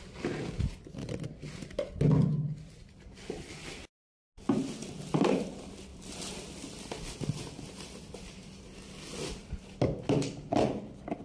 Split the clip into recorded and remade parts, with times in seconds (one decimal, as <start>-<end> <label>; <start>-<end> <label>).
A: 0.0-4.8 recorded; 4.8-5.5 remade; 5.5-5.9 recorded; 5.9-7.5 remade; 7.5-11.2 recorded